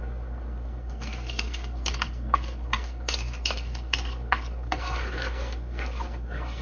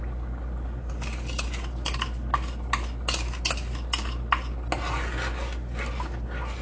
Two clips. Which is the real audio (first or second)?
second